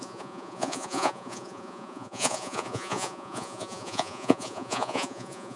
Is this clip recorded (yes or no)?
no